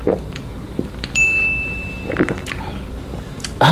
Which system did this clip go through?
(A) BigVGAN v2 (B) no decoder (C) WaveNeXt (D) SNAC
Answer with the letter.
B